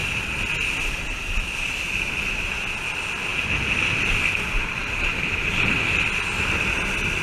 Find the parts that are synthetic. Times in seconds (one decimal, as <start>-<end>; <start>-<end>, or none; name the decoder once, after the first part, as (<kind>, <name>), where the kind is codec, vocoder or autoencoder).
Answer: 4.8-5.5 (vocoder, BigVGAN v2)